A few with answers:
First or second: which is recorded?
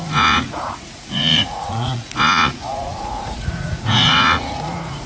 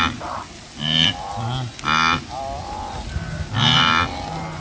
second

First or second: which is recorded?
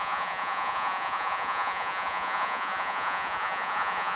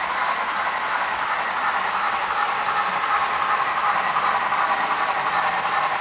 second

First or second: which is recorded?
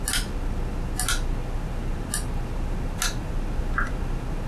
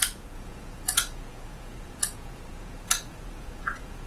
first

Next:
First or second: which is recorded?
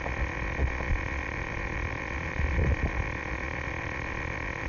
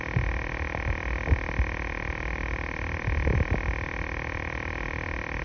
second